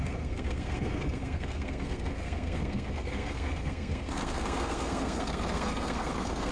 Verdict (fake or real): fake